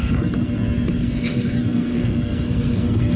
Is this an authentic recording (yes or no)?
no